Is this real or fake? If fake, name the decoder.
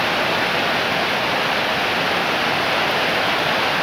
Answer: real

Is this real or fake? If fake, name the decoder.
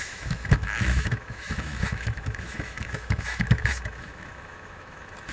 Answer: fake, autoencoder, DAC-VAE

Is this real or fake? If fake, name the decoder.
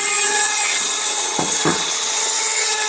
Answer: fake, vocoder, HiFi-GAN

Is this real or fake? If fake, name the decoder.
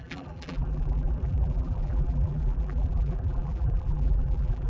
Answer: fake, vocoder, BigVGAN v2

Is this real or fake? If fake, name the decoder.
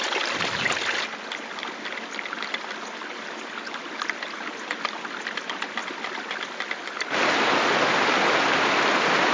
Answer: real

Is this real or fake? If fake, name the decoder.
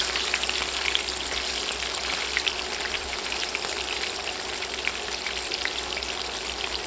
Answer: real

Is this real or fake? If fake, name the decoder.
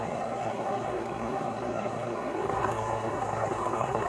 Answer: fake, codec, SNAC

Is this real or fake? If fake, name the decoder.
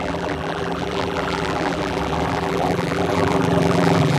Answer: fake, vocoder, BigVGAN v2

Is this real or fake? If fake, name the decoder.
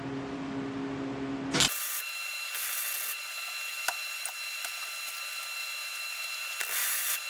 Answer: real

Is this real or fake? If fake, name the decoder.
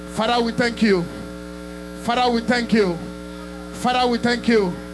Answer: fake, autoencoder, DAC-VAE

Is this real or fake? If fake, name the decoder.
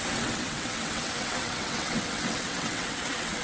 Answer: fake, vocoder, WaveNeXt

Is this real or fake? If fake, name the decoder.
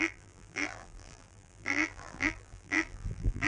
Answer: fake, vocoder, BigVGAN v2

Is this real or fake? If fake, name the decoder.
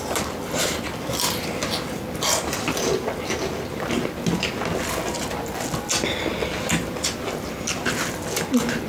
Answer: real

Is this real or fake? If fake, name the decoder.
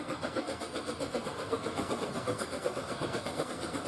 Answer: fake, codec, SNAC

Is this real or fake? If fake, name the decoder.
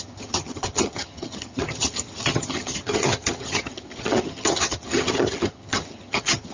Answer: fake, vocoder, HiFi-GAN